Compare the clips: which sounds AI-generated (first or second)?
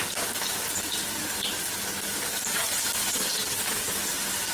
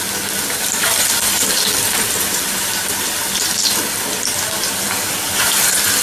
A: second